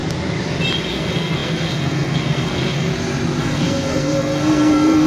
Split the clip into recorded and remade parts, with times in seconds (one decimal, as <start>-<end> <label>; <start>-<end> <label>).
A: 0.0-0.9 recorded; 0.9-2.9 remade; 2.9-3.4 recorded; 3.4-5.1 remade